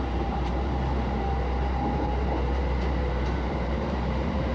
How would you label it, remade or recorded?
remade